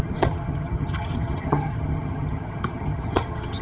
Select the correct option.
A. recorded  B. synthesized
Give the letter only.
B